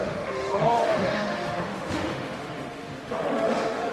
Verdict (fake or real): fake